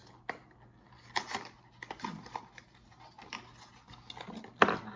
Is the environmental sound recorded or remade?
recorded